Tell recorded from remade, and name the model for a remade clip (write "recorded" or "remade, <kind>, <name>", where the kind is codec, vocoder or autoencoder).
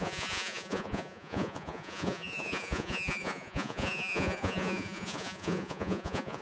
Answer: remade, vocoder, Vocos